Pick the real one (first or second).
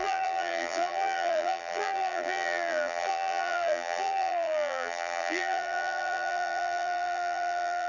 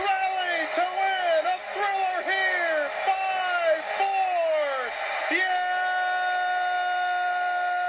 second